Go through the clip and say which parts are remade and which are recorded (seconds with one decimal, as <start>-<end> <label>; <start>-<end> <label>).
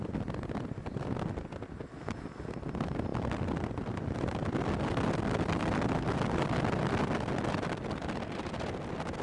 0.0-3.1 recorded; 3.1-8.1 remade; 8.1-9.2 recorded